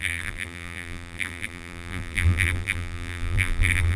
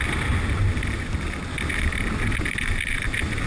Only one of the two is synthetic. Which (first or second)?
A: first